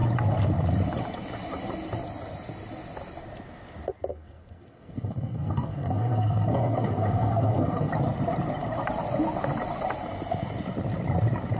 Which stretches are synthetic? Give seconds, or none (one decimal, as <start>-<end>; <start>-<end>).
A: 4.1-7.9

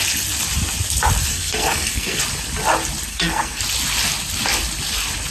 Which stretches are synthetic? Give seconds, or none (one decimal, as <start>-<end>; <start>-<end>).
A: 1.3-2.2; 3.1-3.6

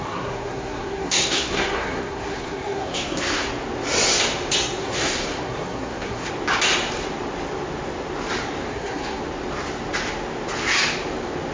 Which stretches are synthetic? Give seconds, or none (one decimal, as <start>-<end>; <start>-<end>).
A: 0.0-3.5; 4.8-6.3; 8.7-9.2

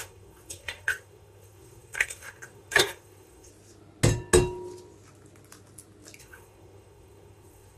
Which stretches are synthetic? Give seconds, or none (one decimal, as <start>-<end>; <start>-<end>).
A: 0.0-3.5; 6.2-7.8

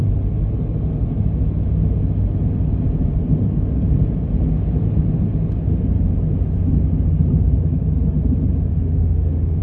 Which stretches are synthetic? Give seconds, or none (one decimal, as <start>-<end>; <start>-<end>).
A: 8.7-9.6

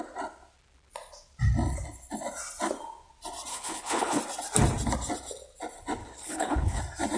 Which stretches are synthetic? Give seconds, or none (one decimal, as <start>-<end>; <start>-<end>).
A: 3.5-4.2; 6.0-6.8

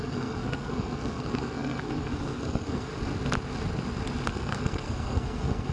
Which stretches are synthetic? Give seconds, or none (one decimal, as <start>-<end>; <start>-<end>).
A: 0.0-2.9; 4.3-5.7

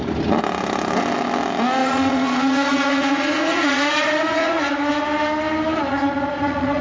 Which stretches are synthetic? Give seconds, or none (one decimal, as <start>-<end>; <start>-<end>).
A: 1.8-5.0; 5.9-6.8